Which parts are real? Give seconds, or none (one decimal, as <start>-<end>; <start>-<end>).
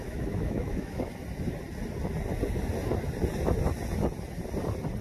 1.1-5.0